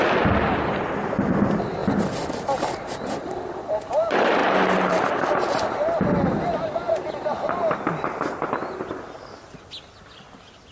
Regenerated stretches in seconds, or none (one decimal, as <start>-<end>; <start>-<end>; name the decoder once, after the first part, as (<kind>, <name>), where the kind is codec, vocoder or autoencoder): none